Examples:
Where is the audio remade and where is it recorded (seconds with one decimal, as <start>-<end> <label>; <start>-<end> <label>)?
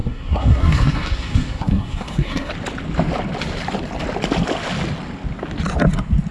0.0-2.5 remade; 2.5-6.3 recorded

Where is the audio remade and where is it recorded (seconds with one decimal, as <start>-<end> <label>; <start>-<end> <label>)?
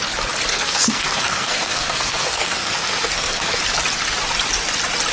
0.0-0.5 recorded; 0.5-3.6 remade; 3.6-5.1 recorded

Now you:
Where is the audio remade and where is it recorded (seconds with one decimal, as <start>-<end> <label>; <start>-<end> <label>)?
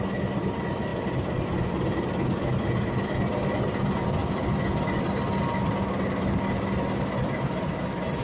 0.0-8.2 recorded